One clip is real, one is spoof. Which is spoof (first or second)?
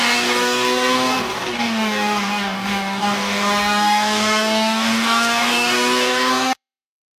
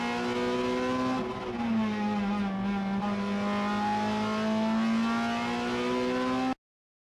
first